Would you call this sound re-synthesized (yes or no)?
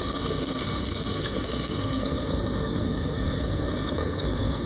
yes